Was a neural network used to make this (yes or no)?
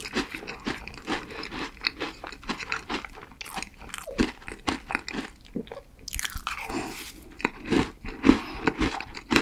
no